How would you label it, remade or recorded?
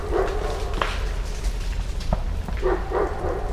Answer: recorded